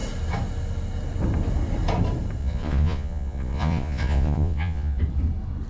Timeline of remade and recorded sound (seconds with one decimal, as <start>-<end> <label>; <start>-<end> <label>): 0.0-2.4 recorded; 2.4-5.0 remade; 5.0-5.7 recorded